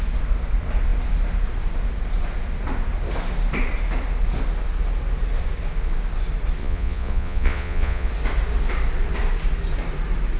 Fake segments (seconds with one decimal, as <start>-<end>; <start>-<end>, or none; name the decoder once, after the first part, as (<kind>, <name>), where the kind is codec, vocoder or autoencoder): 6.6-8.1 (vocoder, Vocos)